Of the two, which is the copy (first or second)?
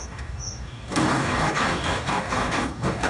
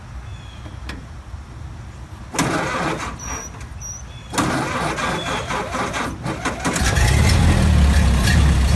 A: first